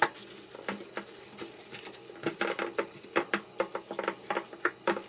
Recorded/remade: recorded